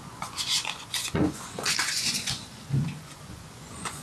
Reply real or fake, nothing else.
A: fake